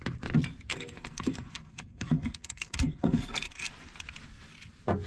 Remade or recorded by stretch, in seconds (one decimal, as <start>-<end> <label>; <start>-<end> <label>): 0.0-0.7 recorded; 0.7-3.7 remade; 3.7-5.1 recorded